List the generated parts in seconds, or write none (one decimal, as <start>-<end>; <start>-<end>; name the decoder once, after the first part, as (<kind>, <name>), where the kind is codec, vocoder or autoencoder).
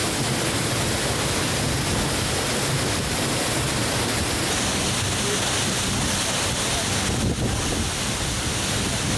none